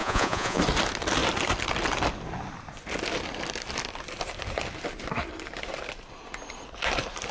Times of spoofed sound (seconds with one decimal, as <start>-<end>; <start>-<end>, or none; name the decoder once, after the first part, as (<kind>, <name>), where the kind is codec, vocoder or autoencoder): 0.0-0.6 (vocoder, Vocos)